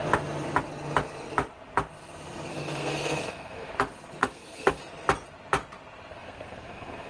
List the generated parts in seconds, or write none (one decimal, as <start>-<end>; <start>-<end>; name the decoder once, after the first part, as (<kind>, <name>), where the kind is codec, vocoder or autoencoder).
2.5-3.7 (codec, SNAC); 4.2-4.8; 6.1-7.1